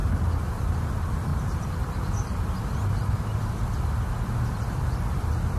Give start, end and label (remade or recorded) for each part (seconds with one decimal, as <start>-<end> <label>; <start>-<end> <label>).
0.0-0.6 recorded; 0.6-1.3 remade; 1.3-4.7 recorded; 4.7-5.6 remade